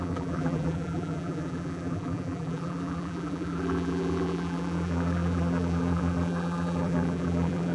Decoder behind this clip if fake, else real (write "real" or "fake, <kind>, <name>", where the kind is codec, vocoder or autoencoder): fake, vocoder, BigVGAN v2